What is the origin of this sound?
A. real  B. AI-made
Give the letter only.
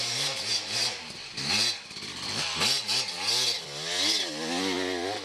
A